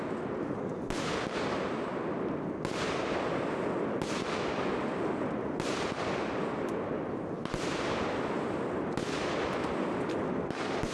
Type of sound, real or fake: real